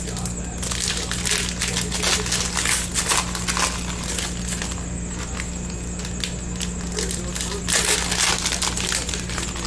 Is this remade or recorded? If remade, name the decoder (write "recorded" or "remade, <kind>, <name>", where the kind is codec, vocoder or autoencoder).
recorded